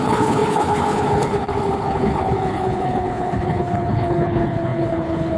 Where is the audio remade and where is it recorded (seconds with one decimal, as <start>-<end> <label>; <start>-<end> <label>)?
0.0-5.4 remade